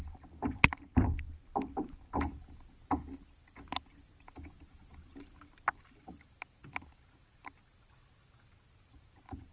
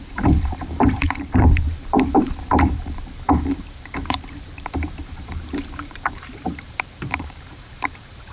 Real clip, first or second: first